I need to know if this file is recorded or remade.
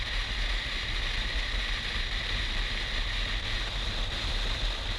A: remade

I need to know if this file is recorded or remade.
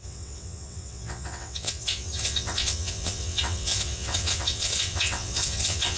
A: remade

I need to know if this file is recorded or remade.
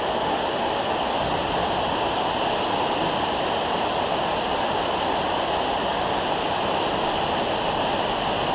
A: recorded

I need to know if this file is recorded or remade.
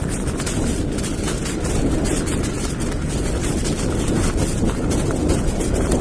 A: recorded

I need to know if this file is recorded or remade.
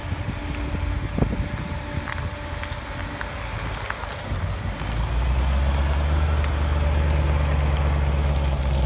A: recorded